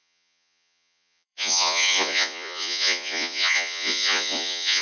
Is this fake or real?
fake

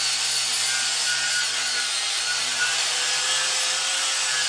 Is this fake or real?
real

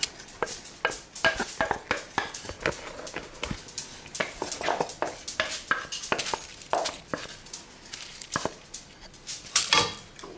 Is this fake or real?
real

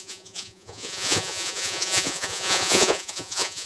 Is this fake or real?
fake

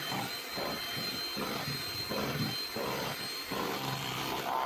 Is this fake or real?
real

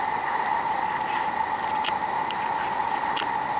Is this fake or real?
real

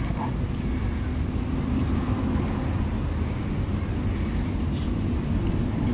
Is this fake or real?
real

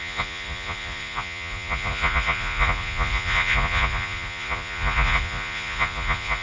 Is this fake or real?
fake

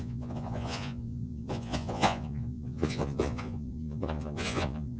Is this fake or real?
fake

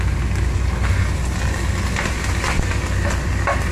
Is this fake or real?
real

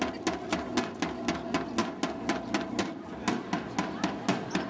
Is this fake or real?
real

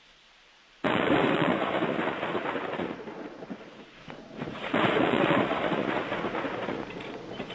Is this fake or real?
fake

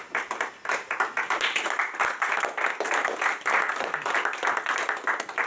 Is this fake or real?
real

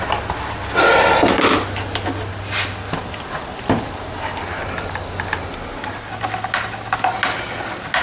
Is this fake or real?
real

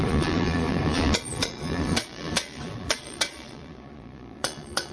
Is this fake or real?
fake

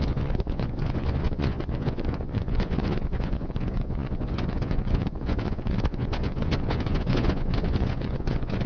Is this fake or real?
fake